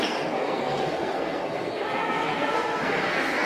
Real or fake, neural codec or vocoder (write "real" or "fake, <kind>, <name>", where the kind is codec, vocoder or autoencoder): fake, codec, SNAC